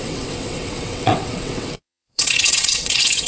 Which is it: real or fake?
fake